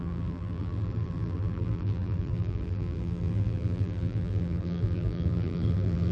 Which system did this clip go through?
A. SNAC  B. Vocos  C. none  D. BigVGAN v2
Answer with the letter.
D